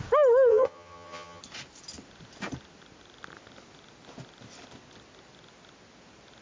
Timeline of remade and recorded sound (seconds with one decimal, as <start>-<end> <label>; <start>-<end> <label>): 0.0-0.5 recorded; 0.5-1.4 remade; 1.4-6.4 recorded